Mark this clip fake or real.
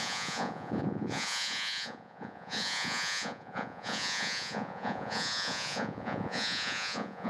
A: fake